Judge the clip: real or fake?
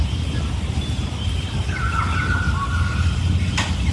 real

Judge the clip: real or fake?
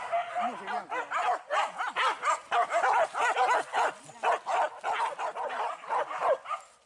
real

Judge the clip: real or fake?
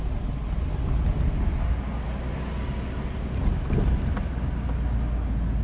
real